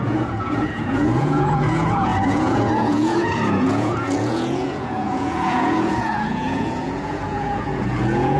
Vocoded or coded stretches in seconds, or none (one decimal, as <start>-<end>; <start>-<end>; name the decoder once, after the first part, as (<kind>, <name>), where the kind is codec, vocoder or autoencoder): 0.0-8.4 (vocoder, Vocos)